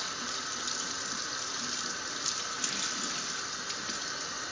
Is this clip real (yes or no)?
yes